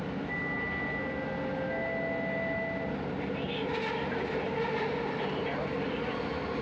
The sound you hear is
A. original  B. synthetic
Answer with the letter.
A